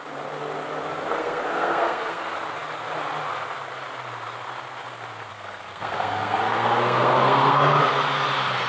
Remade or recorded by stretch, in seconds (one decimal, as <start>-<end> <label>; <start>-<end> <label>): 0.0-1.1 recorded; 1.1-2.2 remade; 2.2-5.3 recorded; 5.3-7.8 remade; 7.8-8.7 recorded